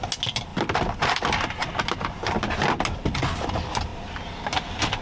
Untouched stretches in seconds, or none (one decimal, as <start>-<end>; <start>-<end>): 0.0-0.5; 1.2-3.9; 4.4-5.0